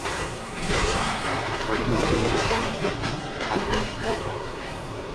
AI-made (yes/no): yes